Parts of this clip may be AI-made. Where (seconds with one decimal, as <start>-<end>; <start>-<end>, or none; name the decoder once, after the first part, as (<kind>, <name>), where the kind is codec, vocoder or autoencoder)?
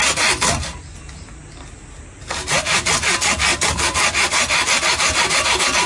none